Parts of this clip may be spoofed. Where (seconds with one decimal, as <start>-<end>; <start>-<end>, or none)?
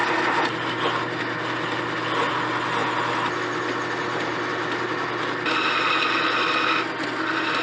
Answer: none